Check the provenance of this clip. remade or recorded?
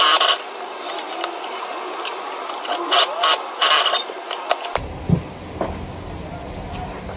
recorded